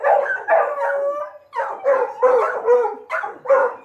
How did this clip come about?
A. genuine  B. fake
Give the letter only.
A